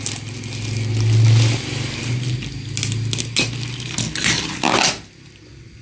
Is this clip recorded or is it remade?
recorded